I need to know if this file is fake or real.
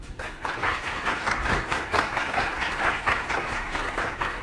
fake